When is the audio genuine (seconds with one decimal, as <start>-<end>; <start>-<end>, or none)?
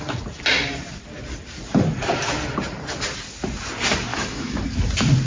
0.0-4.1; 4.6-5.3